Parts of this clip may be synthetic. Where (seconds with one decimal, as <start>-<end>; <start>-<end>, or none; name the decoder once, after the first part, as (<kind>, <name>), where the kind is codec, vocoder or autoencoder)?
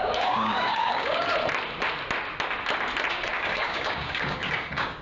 0.0-1.3 (codec, DAC); 3.1-5.0